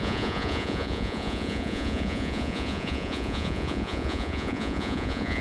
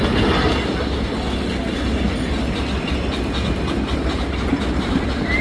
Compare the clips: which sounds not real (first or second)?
first